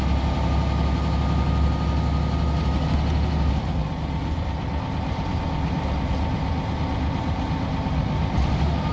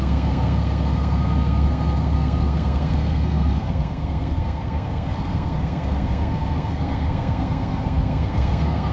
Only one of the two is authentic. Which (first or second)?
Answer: first